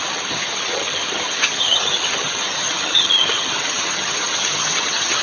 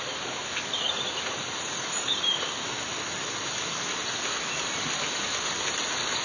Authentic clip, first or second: second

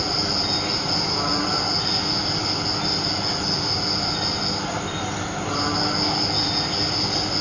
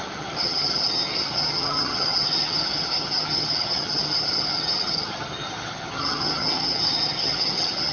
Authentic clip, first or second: first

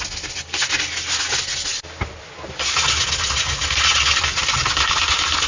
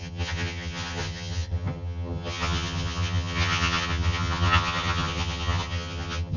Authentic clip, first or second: first